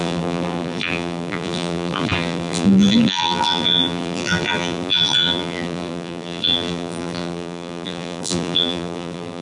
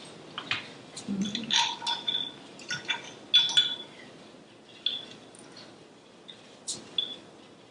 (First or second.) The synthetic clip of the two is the first